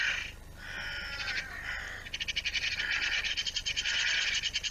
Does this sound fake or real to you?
real